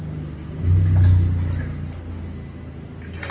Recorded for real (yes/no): yes